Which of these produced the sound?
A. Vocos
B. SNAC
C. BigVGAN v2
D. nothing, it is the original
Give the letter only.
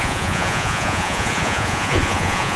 A